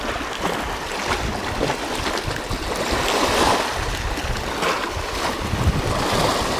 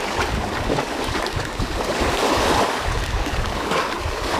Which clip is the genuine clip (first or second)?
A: first